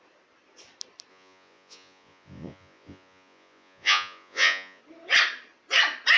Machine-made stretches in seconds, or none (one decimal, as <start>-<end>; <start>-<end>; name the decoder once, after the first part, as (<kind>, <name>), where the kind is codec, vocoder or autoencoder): 1.1-4.8 (vocoder, Vocos)